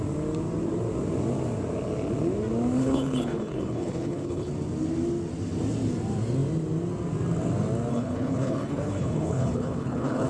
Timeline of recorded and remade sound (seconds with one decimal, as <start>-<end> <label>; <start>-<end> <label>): 0.0-2.8 recorded; 2.8-4.5 remade; 4.5-7.9 recorded; 7.9-10.3 remade